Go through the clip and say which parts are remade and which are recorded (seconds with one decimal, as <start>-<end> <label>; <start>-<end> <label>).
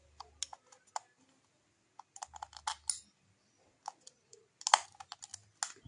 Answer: 0.0-5.9 recorded